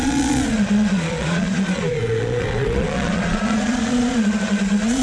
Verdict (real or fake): fake